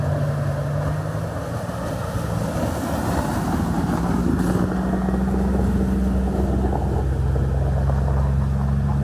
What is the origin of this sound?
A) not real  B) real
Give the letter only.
B